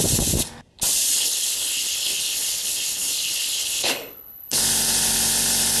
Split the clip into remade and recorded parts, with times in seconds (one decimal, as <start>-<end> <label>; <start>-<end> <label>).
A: 0.0-1.1 recorded; 1.1-4.6 remade; 4.6-5.8 recorded